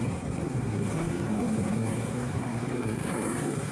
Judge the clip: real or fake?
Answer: fake